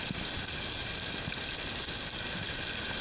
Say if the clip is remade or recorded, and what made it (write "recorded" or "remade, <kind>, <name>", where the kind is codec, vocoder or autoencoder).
recorded